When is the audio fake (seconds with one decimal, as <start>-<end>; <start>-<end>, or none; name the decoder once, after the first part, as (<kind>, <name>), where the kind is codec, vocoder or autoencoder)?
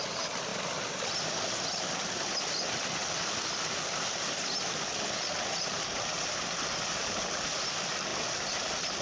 none